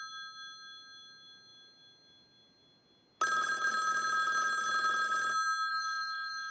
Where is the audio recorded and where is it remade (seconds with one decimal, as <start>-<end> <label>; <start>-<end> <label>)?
0.0-5.7 recorded; 5.7-6.5 remade